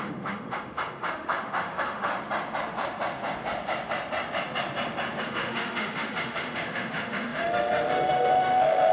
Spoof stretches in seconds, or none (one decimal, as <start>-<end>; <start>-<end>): 0.0-2.1; 5.2-8.9